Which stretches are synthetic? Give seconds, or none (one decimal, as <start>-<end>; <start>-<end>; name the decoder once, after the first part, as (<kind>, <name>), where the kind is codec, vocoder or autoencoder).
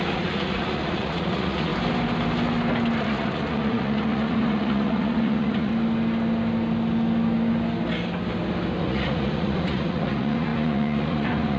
0.0-1.7 (vocoder, Vocos); 3.0-5.7; 8.8-11.6